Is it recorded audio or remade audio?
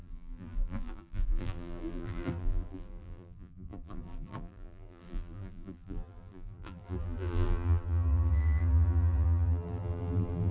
remade